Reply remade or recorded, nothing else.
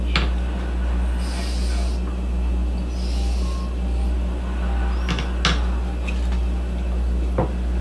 recorded